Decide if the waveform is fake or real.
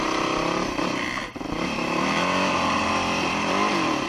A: real